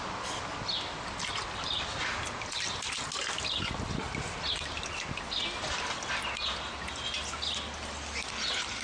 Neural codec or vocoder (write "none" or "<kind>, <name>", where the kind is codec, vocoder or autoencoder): none